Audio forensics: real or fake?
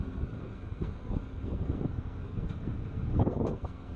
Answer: fake